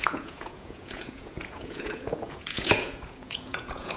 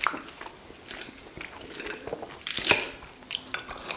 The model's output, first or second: first